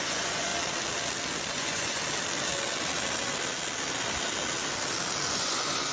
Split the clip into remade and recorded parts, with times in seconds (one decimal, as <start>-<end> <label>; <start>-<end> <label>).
0.0-0.5 remade; 0.5-1.5 recorded; 1.5-2.0 remade; 2.0-5.3 recorded; 5.3-5.9 remade